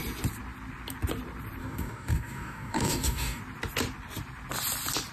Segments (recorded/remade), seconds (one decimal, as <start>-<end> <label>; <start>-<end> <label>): 0.0-1.6 recorded; 1.6-3.4 remade; 3.4-5.1 recorded